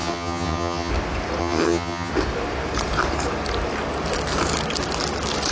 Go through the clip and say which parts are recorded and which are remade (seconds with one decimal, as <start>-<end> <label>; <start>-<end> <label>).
0.0-0.9 remade; 0.9-1.4 recorded; 1.4-2.1 remade; 2.1-5.5 recorded